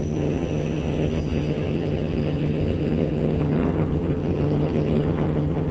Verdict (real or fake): fake